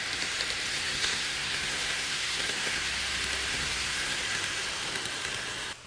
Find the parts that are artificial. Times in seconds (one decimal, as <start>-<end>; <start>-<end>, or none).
0.7-2.9; 3.5-4.2